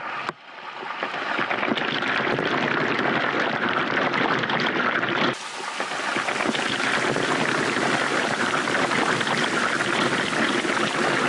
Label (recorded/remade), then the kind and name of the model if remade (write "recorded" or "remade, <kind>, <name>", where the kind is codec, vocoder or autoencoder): remade, vocoder, BigVGAN v2